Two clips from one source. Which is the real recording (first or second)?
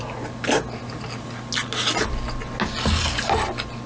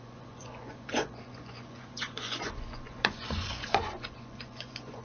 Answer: first